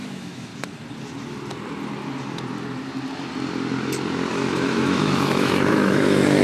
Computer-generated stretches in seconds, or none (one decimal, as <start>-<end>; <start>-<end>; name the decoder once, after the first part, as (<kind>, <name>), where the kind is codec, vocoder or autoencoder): 0.0-0.5 (autoencoder, DAC-VAE); 4.3-6.4